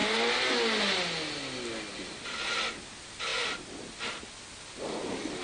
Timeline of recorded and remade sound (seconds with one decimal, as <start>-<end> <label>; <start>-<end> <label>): 0.0-5.4 recorded